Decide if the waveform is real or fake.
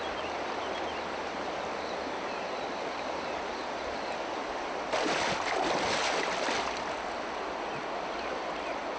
real